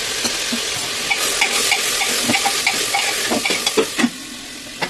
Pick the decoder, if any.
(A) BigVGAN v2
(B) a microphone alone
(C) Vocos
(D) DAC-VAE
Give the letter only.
B